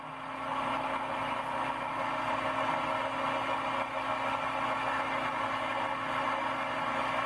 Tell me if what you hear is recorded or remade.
recorded